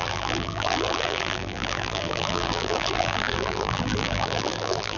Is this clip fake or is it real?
fake